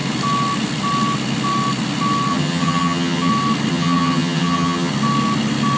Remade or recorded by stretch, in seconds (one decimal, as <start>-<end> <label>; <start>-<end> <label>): 0.0-2.3 recorded; 2.3-3.3 remade; 3.3-3.7 recorded; 3.7-4.9 remade; 4.9-5.8 recorded